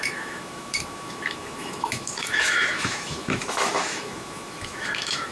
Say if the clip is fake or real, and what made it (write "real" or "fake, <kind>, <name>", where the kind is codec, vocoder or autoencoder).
fake, autoencoder, DAC-VAE